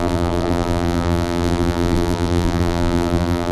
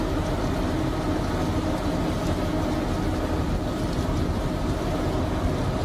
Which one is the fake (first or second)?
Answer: first